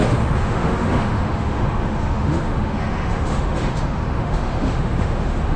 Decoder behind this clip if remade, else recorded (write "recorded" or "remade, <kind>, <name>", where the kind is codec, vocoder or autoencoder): remade, autoencoder, DAC-VAE